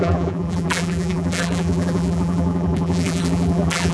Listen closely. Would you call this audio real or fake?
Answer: fake